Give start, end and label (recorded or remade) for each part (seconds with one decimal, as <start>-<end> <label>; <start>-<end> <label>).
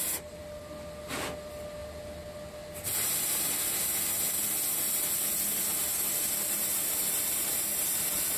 0.0-8.4 recorded